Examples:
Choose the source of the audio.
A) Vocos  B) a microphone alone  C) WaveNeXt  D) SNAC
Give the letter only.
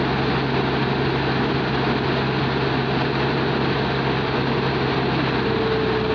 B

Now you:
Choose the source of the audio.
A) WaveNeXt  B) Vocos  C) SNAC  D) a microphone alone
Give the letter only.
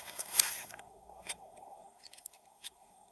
C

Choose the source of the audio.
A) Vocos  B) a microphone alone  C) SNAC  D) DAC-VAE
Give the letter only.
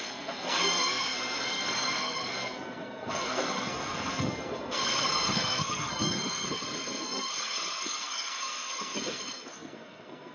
C